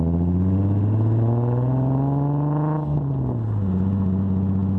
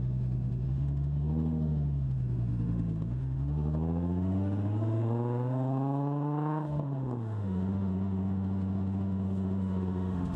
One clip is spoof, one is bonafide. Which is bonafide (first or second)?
first